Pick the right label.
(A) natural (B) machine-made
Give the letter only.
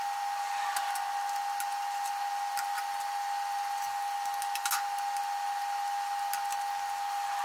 A